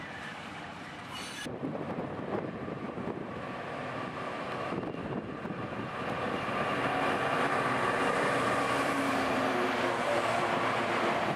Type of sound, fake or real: fake